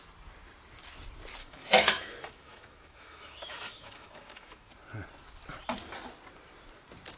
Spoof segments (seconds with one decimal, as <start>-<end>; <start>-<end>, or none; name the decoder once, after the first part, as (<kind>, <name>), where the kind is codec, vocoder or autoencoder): 1.4-4.7 (autoencoder, DAC-VAE)